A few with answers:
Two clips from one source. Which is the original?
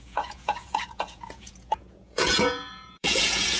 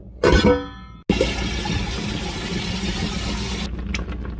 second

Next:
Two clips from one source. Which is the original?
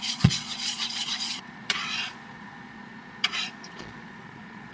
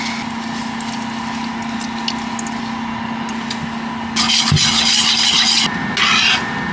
second